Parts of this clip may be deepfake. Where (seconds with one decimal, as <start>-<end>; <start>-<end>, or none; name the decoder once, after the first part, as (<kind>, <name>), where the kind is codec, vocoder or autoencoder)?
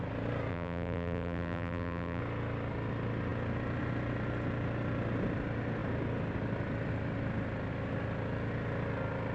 0.5-2.2 (vocoder, BigVGAN v2)